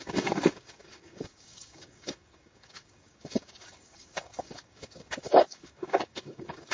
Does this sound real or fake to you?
fake